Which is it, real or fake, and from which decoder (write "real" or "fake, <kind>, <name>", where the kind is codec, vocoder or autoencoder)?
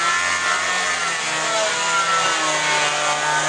real